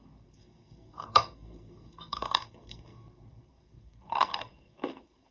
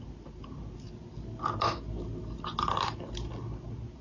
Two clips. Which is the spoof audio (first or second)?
first